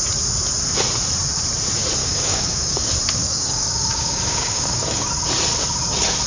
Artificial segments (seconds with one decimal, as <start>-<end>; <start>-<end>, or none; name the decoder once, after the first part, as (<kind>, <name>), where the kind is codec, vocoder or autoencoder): 2.0-2.8 (codec, DAC); 3.2-5.1